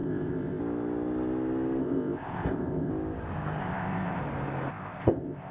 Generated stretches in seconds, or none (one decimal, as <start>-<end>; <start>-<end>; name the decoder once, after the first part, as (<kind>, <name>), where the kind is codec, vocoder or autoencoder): 0.0-0.6 (codec, ZipCodec); 1.8-2.9; 3.6-4.2; 4.7-5.5